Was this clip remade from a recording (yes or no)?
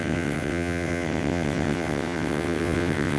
yes